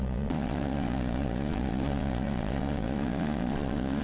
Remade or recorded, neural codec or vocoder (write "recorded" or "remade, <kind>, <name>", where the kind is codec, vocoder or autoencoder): remade, vocoder, Vocos